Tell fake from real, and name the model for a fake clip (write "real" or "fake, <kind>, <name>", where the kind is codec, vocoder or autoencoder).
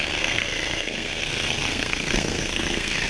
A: fake, codec, SNAC